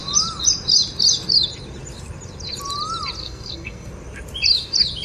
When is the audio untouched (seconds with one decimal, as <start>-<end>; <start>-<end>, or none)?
0.0-3.2; 3.9-5.0